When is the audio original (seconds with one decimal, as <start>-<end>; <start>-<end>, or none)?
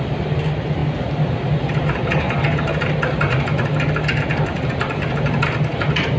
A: 0.0-6.2